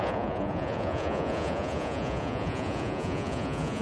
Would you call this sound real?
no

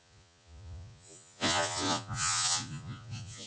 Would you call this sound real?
no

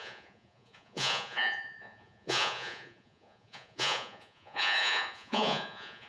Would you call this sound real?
no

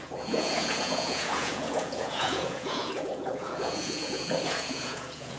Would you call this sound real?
no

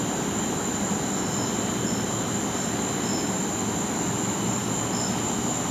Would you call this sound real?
yes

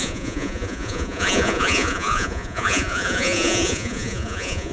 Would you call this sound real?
no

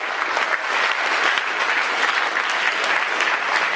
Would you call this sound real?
yes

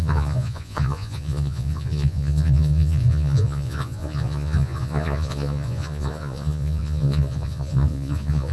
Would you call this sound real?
no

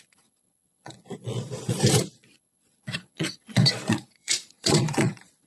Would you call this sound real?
no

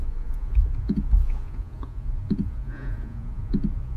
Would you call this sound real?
no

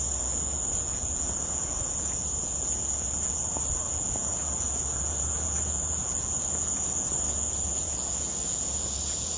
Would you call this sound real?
no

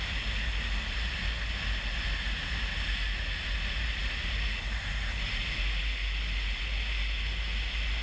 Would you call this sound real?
yes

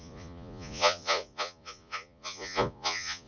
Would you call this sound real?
no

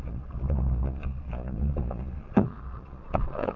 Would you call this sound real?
no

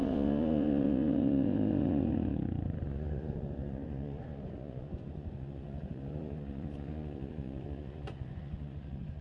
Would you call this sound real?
no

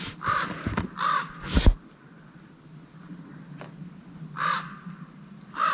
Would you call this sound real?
yes